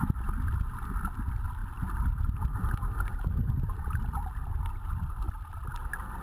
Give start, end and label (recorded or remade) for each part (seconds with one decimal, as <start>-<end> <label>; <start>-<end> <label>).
0.0-6.2 recorded